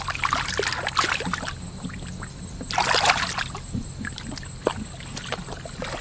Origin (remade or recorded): recorded